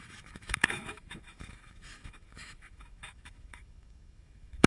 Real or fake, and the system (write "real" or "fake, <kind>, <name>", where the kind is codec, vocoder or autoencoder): fake, autoencoder, DAC-VAE